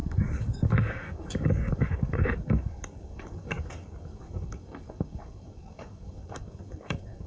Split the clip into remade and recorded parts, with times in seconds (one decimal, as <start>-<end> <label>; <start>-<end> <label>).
0.0-7.3 remade